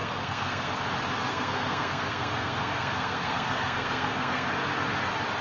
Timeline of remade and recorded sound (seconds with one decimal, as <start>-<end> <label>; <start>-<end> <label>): 0.0-0.7 remade; 0.7-1.3 recorded; 1.3-4.5 remade; 4.5-5.4 recorded